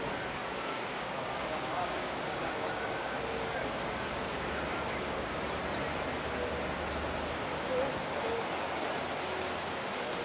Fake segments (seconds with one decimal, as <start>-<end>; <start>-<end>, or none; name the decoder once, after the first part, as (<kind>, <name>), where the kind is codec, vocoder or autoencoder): 0.4-5.4 (codec, DAC)